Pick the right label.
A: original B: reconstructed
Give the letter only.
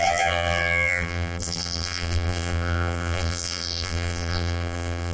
B